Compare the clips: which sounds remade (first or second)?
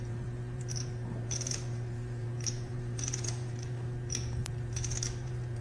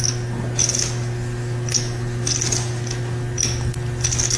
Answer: first